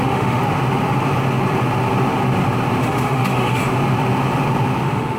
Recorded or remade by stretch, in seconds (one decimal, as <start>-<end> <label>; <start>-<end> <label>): 0.0-0.4 remade; 0.4-2.8 recorded; 2.8-3.6 remade; 3.6-4.8 recorded; 4.8-5.2 remade